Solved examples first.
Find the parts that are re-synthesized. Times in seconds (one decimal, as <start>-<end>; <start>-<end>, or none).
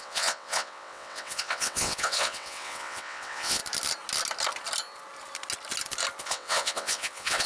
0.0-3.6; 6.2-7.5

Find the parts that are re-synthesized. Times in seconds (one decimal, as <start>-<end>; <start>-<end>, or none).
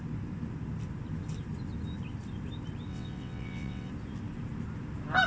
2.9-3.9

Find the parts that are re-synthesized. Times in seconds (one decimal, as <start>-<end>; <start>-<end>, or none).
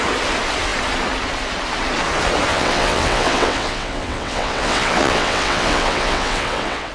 2.5-6.9